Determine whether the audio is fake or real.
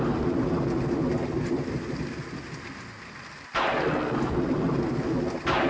real